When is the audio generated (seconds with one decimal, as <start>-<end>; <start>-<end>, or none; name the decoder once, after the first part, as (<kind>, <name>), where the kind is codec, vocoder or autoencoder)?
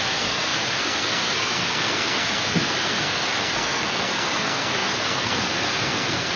0.0-6.4 (codec, SNAC)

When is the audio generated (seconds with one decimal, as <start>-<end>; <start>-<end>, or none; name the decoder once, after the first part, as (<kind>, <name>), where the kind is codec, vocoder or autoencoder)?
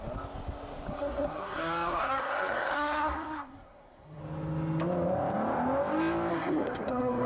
0.9-4.2 (codec, SNAC); 6.3-7.3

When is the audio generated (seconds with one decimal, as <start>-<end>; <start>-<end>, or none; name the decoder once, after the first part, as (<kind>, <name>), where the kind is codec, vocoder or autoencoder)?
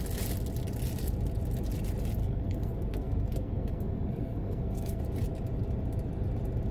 2.2-5.0 (codec, SNAC)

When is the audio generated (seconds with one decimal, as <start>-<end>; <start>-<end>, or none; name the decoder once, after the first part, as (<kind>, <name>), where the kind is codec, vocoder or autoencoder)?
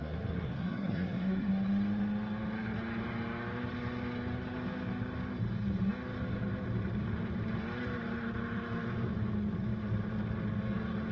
0.0-1.5 (codec, SNAC)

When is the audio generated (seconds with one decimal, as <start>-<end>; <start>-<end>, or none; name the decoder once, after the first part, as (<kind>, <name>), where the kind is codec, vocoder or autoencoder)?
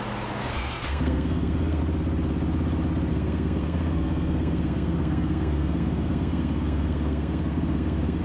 0.4-1.8 (codec, SNAC); 3.1-8.2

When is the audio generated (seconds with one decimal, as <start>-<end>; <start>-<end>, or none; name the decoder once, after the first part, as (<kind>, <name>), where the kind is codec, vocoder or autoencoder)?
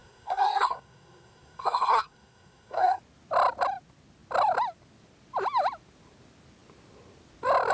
0.0-3.0 (codec, SNAC)